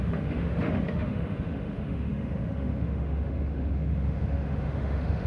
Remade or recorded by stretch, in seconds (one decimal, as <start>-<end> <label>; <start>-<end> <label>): 0.0-5.3 remade